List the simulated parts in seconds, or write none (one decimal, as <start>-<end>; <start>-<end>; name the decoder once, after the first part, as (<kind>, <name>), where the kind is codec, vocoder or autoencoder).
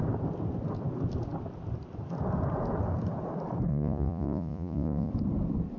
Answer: 3.7-5.1 (vocoder, Vocos)